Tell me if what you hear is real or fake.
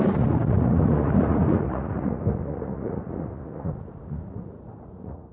fake